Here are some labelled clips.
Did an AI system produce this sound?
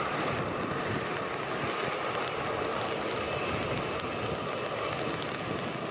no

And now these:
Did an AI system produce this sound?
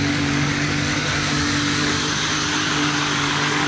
yes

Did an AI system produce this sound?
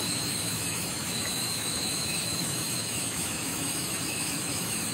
yes